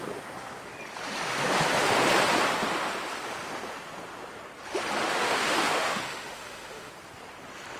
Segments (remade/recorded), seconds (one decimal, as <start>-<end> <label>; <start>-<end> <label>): 0.0-5.0 recorded; 5.0-6.9 remade; 6.9-7.8 recorded